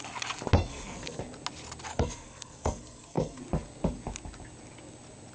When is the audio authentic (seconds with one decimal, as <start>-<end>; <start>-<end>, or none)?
0.0-0.7; 1.2-1.9; 3.4-5.3